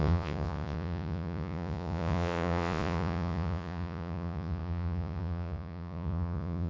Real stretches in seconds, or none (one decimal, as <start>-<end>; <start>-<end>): none